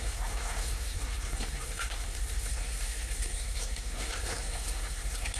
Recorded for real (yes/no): no